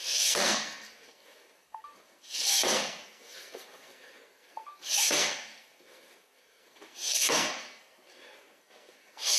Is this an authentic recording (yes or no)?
no